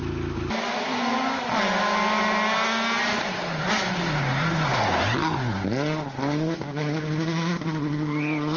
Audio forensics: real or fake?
real